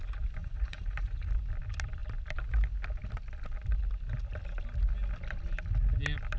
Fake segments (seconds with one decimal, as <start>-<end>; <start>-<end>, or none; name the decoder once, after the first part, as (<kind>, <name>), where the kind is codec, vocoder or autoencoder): 0.4-1.3 (vocoder, Vocos)